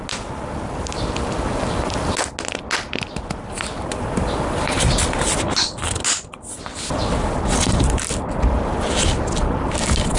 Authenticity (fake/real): real